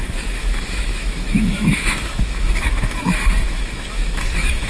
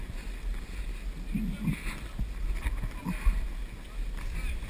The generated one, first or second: first